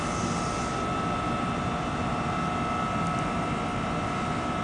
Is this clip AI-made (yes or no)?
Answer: no